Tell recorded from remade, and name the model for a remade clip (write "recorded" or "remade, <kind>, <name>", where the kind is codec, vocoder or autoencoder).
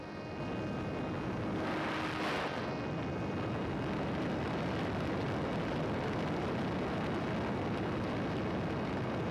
recorded